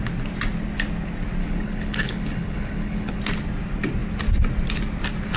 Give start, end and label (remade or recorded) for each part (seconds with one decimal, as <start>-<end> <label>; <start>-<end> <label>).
0.0-1.4 recorded; 1.4-3.2 remade; 3.2-5.4 recorded